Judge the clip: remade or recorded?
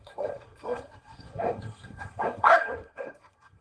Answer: remade